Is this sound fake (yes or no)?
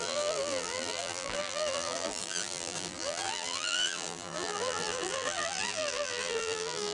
yes